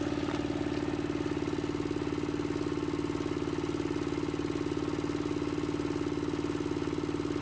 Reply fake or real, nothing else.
real